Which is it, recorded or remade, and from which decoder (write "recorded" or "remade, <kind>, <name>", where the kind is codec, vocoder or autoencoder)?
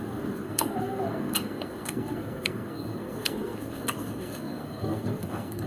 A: remade, codec, SNAC